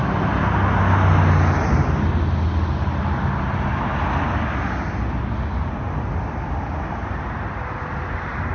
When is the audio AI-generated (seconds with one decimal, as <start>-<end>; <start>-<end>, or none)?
none